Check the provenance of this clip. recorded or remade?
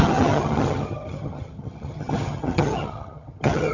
remade